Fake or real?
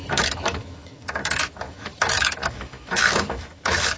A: fake